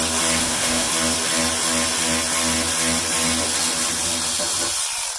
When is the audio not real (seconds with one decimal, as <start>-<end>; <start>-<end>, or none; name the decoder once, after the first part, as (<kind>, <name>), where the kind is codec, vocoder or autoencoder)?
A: 0.4-0.9 (autoencoder, DAC-VAE)